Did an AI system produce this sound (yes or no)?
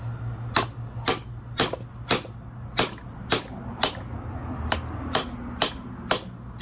no